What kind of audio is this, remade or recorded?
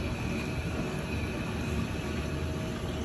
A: recorded